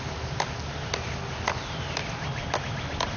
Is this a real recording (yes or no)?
yes